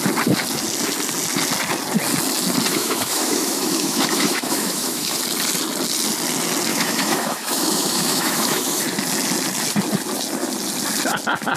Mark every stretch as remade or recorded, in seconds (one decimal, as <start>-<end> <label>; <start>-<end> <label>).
0.0-2.7 recorded; 2.7-5.2 remade; 5.2-6.7 recorded; 6.7-8.8 remade; 8.8-11.6 recorded